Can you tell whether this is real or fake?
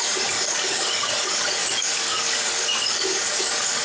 fake